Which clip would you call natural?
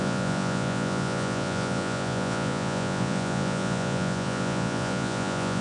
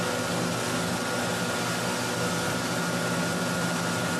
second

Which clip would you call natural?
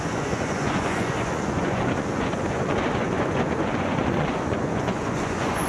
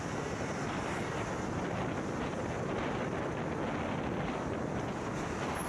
second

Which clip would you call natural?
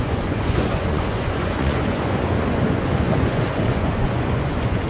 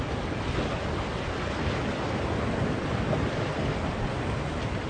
second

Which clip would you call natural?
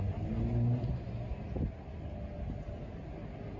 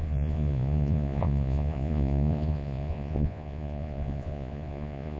first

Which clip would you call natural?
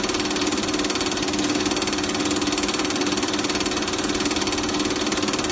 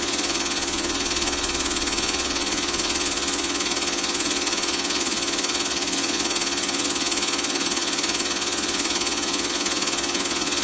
first